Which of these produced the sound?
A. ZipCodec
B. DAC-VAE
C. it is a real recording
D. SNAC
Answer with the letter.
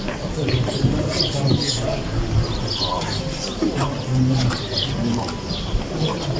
C